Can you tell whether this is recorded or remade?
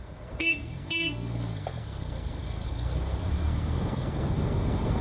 remade